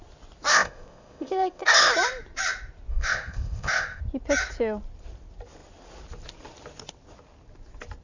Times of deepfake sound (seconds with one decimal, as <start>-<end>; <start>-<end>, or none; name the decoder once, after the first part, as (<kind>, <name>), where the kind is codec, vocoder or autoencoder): 0.5-1.9 (codec, ZipCodec); 2.9-4.0